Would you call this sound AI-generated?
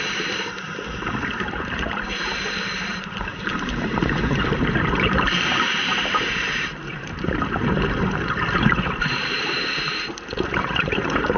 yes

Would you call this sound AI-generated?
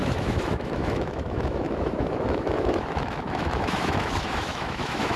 yes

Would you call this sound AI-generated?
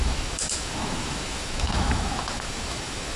yes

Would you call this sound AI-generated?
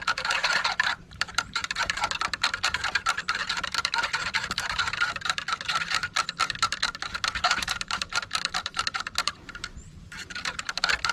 yes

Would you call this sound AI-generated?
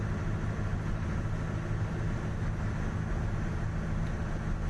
no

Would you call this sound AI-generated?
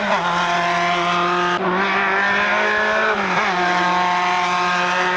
no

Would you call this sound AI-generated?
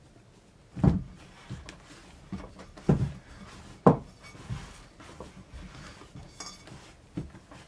no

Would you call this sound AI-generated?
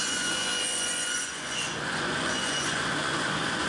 yes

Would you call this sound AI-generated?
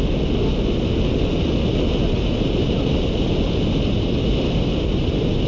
no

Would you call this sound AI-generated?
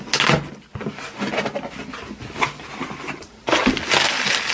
no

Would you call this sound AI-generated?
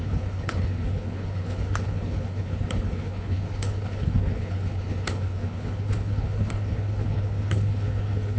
yes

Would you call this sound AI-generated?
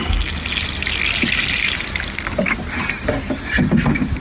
no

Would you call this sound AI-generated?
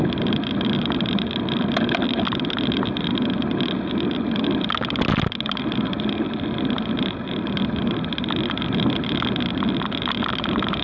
no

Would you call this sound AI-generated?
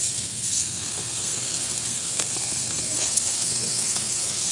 yes